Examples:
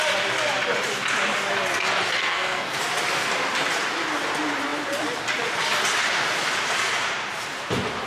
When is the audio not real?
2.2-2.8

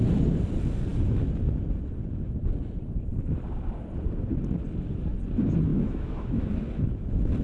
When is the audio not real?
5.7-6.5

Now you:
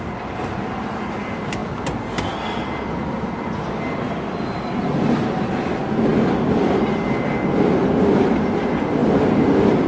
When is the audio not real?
none

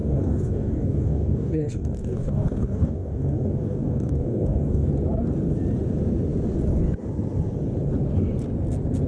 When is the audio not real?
0.0-4.9